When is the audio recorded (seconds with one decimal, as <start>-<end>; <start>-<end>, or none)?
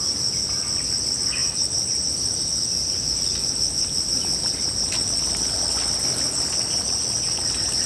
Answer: 0.0-7.9